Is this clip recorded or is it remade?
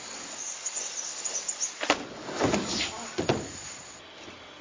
recorded